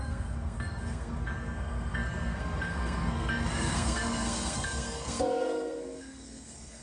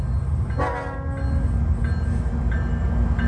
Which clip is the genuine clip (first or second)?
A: second